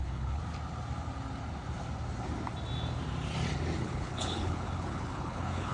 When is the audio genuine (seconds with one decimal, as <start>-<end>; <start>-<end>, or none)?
0.4-3.8